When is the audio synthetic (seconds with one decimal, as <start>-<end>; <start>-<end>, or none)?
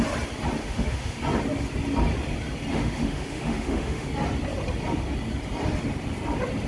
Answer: 0.6-1.2; 2.7-4.1